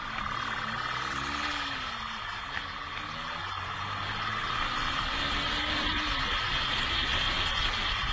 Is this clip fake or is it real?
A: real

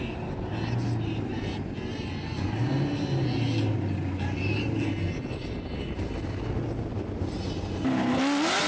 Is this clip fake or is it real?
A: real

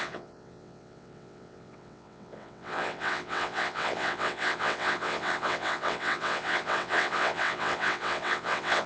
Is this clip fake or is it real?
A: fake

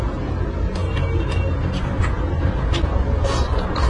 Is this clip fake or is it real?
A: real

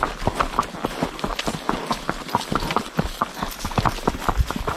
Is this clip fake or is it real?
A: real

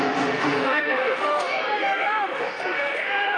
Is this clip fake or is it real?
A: fake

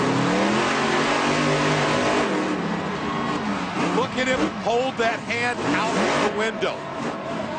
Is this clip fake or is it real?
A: real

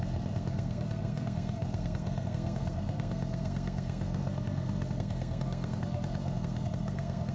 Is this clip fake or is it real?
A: fake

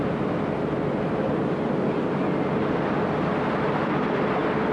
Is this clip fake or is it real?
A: real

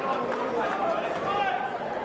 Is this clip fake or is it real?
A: real